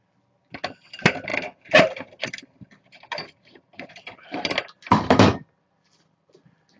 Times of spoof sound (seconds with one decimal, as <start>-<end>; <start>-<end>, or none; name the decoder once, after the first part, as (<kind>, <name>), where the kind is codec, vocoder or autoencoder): none

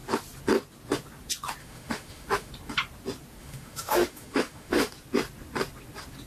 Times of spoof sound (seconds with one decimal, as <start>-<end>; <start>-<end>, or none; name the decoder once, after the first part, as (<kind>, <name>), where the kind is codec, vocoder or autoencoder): 1.6-2.5 (autoencoder, DAC-VAE); 3.4-4.9